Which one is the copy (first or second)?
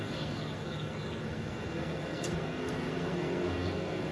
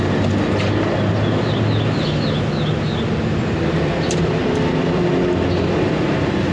first